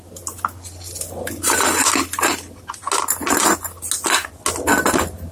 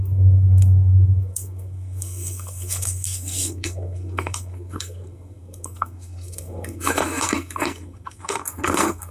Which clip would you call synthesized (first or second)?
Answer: second